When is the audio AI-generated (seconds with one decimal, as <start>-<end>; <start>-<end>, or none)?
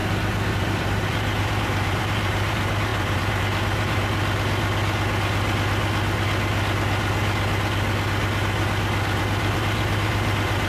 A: 0.5-4.0; 9.2-10.7